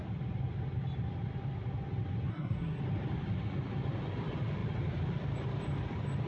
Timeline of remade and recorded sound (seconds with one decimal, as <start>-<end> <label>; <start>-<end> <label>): 0.0-2.3 recorded; 2.3-2.8 remade; 2.8-6.3 recorded